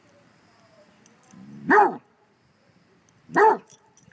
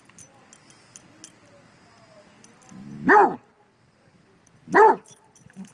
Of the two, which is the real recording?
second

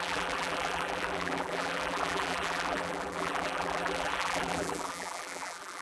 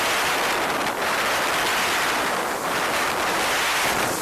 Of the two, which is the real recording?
second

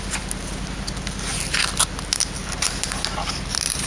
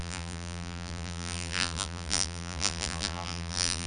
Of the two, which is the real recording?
first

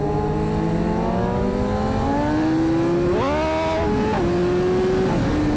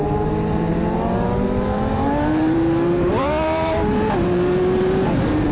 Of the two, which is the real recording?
first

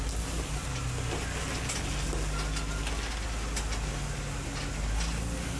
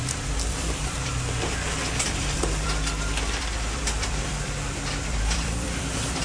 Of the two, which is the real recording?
first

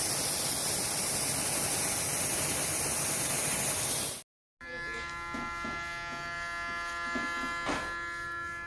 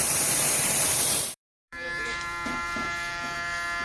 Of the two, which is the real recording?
first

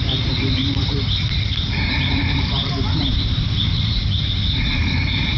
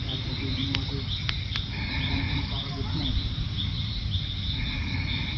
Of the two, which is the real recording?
second